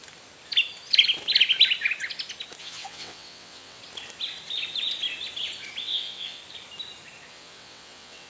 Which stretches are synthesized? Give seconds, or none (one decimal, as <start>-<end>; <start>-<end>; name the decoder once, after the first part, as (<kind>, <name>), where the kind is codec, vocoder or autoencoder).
2.6-3.8 (vocoder, WaveNeXt); 5.8-6.4; 7.3-8.3